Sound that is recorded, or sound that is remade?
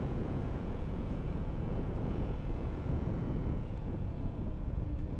remade